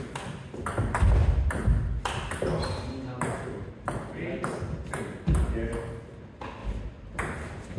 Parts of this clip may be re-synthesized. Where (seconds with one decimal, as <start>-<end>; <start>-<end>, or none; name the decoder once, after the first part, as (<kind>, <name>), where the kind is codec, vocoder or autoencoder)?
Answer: none